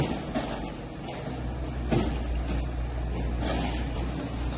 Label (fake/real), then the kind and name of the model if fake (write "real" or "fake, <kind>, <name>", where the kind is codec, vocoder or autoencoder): real